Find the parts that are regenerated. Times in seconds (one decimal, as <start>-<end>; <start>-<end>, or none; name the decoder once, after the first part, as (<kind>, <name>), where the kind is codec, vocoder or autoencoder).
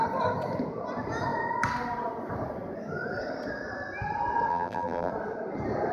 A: 4.5-5.1 (vocoder, BigVGAN v2)